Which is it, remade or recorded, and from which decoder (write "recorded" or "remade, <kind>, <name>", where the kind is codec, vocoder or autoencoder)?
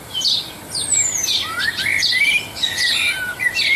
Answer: remade, vocoder, BigVGAN v2